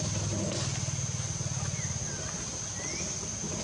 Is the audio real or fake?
real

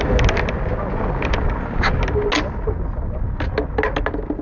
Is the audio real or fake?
real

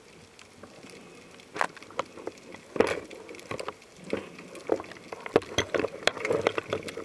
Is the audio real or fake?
real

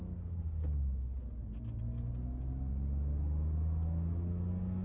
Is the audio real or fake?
real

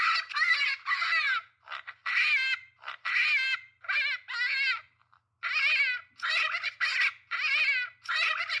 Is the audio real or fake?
real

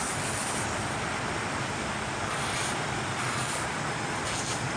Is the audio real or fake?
fake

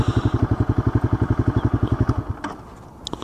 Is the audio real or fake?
real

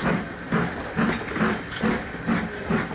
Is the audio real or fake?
real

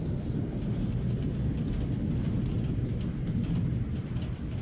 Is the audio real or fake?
real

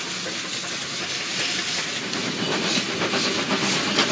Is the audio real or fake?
real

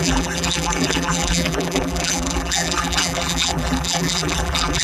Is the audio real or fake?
fake